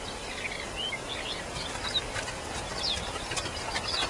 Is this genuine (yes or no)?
yes